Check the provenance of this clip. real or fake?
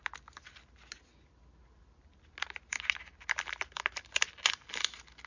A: real